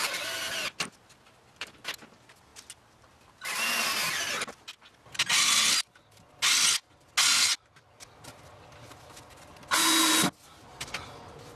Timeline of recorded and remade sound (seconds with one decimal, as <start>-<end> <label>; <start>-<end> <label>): 0.0-11.6 recorded